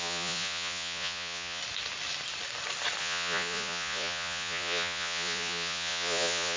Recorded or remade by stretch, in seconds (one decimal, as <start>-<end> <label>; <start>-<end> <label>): 0.0-1.6 remade; 1.6-3.0 recorded; 3.0-6.6 remade